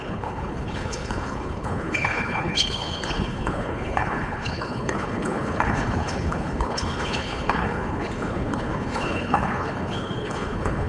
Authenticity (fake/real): fake